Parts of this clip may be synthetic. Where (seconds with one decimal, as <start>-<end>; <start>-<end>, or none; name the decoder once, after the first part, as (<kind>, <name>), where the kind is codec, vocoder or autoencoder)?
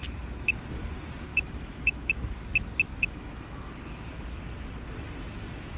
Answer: 1.3-2.3 (autoencoder, DAC-VAE); 2.9-3.7